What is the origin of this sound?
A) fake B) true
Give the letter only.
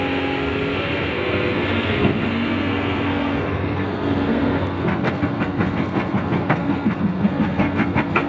A